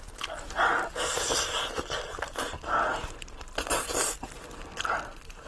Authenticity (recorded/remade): recorded